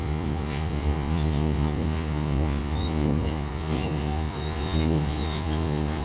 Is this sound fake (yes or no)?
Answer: yes